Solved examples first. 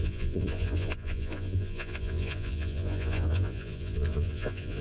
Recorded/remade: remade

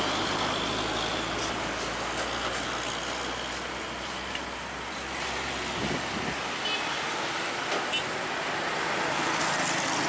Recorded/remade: recorded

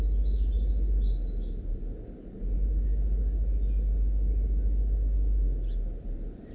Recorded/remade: recorded